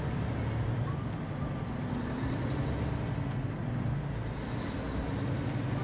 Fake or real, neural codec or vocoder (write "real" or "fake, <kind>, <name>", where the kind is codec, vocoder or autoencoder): real